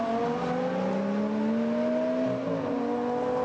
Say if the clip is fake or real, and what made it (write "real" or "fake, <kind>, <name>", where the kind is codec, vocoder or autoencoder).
real